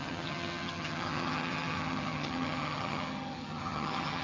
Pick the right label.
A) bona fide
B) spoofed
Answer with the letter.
B